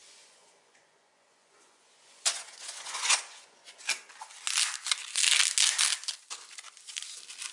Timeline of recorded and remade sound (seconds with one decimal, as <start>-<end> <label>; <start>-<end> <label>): 0.0-3.8 remade; 3.8-7.5 recorded